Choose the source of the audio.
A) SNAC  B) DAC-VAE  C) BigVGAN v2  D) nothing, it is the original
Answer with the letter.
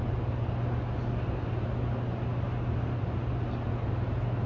D